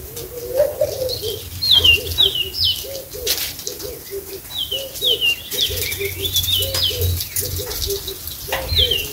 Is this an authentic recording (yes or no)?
yes